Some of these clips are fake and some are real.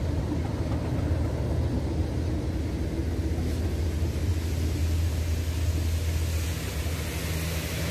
real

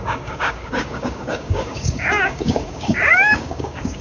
fake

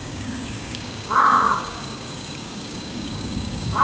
fake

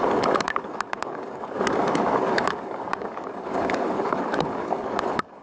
fake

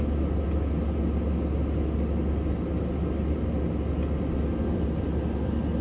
real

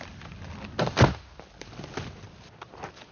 real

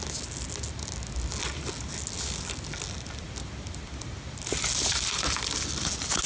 real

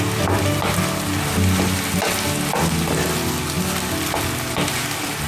real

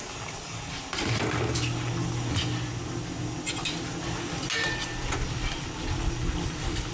real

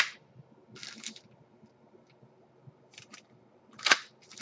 real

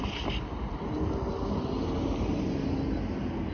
real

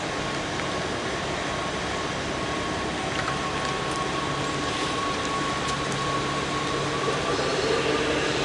real